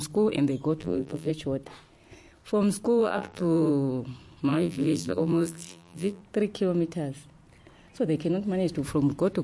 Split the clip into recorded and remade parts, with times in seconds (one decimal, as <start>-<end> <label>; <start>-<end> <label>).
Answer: 0.0-0.8 recorded; 0.8-1.3 remade; 1.3-3.0 recorded; 3.0-3.7 remade; 3.7-4.5 recorded; 4.5-6.2 remade; 6.2-9.4 recorded